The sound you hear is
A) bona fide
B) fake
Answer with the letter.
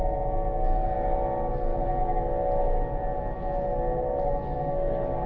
A